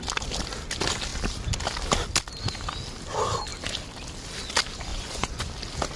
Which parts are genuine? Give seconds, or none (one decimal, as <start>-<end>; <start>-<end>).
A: 0.0-4.9; 5.5-6.0